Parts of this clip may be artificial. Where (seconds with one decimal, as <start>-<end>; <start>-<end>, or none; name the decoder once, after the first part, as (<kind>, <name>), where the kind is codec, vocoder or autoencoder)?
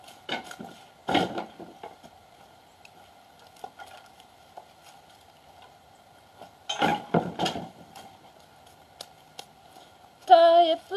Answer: none